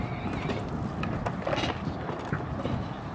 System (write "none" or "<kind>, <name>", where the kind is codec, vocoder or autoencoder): none